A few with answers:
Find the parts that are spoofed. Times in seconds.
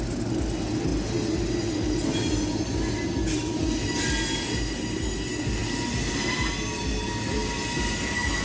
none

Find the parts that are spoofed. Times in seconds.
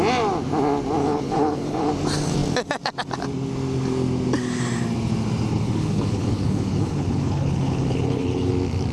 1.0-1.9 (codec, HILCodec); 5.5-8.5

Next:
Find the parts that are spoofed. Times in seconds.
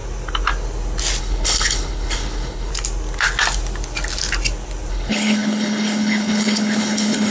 1.2-2.7 (codec, HILCodec); 4.9-7.3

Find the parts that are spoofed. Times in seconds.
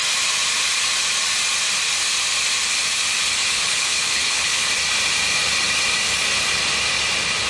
3.4-4.7 (codec, HILCodec)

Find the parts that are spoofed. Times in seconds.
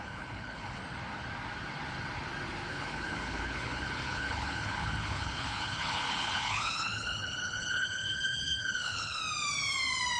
0.0-0.8 (codec, HILCodec); 2.7-9.2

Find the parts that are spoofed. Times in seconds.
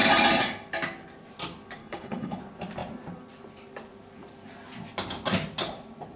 1.8-2.4 (codec, HILCodec)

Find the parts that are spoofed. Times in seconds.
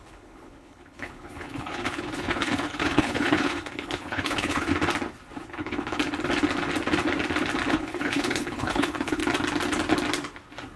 0.0-4.7 (codec, HILCodec); 5.5-6.0; 7.7-9.2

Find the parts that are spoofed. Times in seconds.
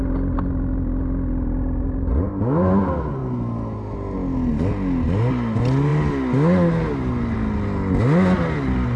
none